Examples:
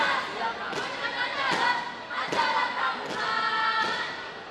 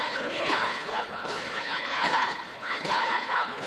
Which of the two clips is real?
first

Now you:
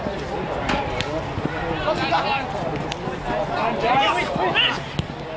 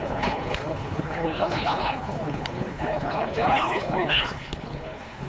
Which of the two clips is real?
first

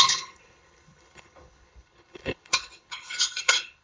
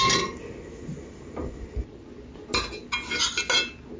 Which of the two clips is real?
second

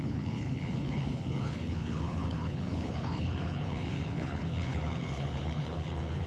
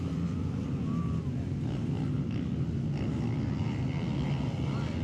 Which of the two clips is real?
second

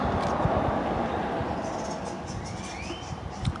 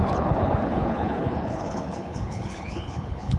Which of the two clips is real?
first